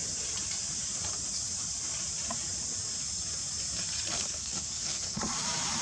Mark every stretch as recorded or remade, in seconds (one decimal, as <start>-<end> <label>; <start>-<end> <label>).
0.0-4.2 recorded; 4.2-5.2 remade; 5.2-5.8 recorded